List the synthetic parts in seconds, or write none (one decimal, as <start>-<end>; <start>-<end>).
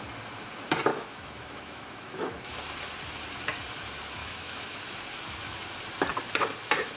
0.9-2.5; 4.2-4.8